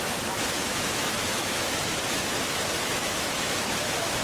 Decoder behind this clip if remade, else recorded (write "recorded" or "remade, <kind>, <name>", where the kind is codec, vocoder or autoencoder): remade, autoencoder, DAC-VAE